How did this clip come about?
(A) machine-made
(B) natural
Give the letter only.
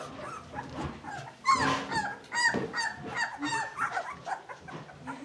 B